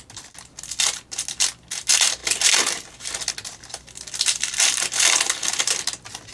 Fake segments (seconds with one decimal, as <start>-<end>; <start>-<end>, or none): none